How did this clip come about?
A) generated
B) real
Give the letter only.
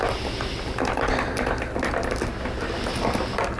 B